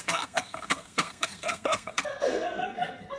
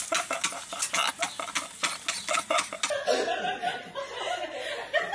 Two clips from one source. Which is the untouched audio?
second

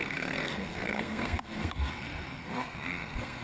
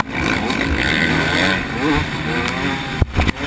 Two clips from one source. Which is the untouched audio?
second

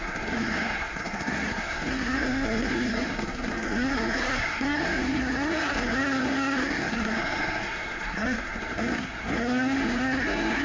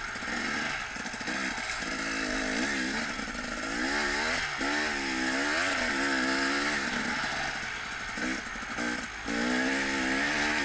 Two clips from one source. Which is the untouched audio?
second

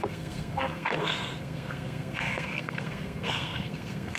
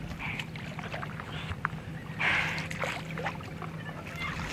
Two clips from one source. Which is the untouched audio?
second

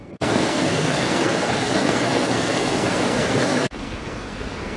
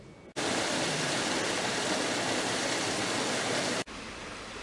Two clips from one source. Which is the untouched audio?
second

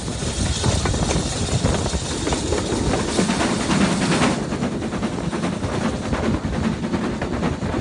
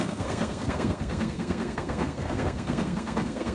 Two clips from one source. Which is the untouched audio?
first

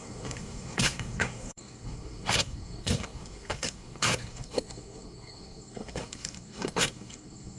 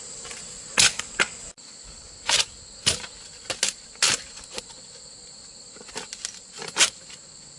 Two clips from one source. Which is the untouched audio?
second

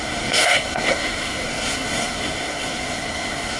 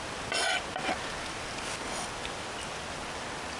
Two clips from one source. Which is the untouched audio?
second